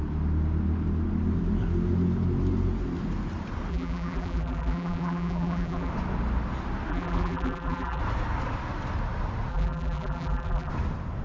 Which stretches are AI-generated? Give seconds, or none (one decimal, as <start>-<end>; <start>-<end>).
3.7-5.9; 6.9-8.0; 9.5-10.7